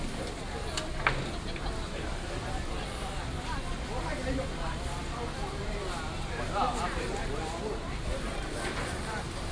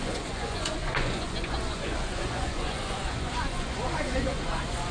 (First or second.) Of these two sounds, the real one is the first